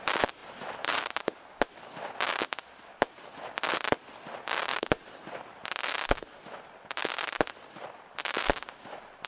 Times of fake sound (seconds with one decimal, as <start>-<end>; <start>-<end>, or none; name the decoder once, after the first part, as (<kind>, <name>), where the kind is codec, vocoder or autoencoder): 0.4-1.2 (vocoder, BigVGAN v2); 4.7-5.6